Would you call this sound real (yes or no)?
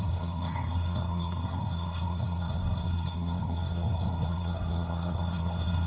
no